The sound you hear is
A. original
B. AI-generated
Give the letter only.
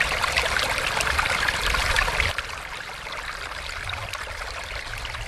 B